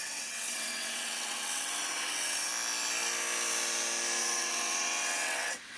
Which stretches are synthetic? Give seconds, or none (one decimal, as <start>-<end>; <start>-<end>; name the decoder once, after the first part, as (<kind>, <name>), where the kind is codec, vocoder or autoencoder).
0.0-2.5 (vocoder, WaveNeXt); 4.2-5.8